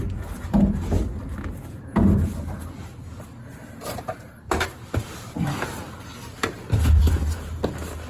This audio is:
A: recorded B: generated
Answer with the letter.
A